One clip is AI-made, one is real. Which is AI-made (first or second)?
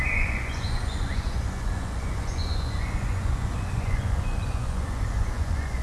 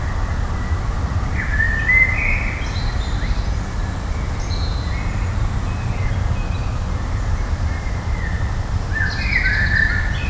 first